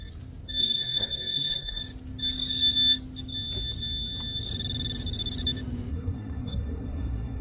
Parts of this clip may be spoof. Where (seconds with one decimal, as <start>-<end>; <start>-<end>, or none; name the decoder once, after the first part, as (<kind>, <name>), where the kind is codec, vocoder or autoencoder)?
0.6-1.8 (codec, SNAC); 5.9-7.4